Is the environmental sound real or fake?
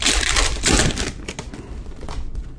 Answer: real